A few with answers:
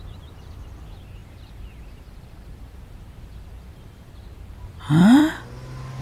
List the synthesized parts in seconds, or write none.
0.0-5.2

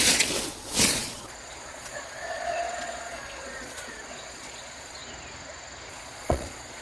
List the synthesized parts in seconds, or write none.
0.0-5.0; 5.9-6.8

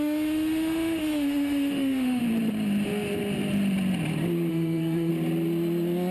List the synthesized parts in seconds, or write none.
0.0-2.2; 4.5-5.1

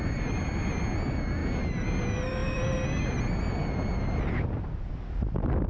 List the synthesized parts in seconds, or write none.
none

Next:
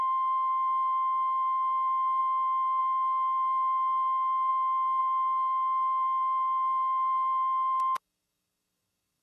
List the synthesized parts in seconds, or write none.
0.0-2.2; 2.8-4.5; 5.0-9.2

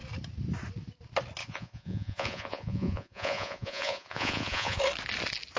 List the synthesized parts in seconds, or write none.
1.4-4.8

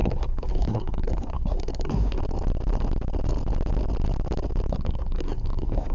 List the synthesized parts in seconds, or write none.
0.0-2.2; 4.7-5.9

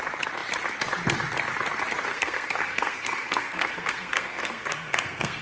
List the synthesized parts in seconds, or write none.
2.1-5.4